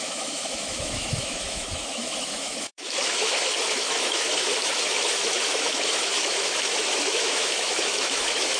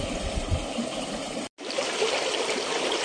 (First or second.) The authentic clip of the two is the second